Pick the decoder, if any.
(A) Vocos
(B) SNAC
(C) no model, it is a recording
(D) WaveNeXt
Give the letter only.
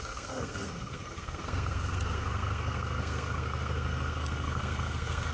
B